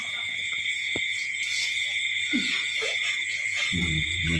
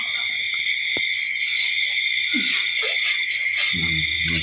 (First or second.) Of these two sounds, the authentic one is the second